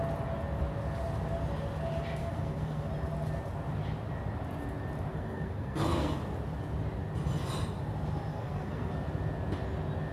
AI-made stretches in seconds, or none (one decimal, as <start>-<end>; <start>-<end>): 2.2-2.9; 5.1-6.2; 8.3-8.9